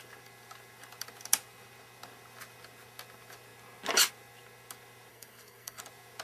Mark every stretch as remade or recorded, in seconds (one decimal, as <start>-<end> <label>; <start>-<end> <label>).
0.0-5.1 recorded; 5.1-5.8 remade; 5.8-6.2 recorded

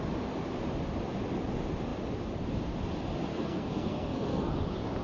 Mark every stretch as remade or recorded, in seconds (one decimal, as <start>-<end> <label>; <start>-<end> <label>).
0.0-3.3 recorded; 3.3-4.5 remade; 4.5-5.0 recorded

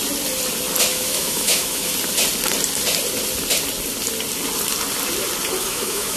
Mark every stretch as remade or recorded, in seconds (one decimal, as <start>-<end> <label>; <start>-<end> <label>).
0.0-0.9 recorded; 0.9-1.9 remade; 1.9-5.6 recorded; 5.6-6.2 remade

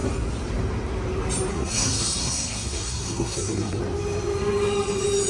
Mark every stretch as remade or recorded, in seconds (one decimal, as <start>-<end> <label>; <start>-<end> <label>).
0.0-1.5 recorded; 1.5-3.8 remade; 3.8-5.3 recorded

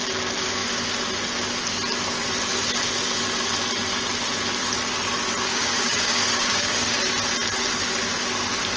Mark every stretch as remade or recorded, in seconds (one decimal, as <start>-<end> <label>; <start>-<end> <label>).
0.0-5.5 recorded; 5.5-6.9 remade; 6.9-8.8 recorded